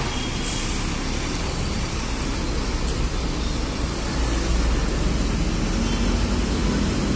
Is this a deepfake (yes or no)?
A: no